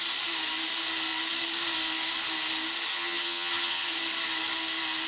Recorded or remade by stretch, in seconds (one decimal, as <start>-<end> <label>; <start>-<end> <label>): 0.0-2.9 recorded; 2.9-3.9 remade; 3.9-5.1 recorded